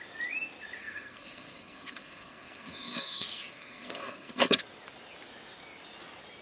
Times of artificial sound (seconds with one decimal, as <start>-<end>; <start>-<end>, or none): 0.8-4.6